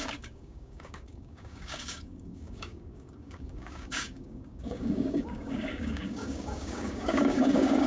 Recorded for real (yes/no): no